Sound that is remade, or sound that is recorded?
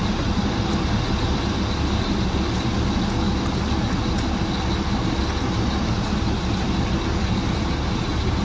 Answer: recorded